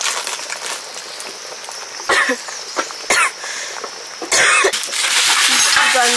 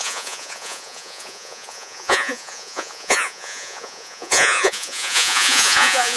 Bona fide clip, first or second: first